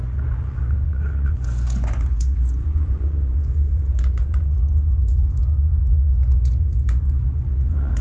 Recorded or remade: remade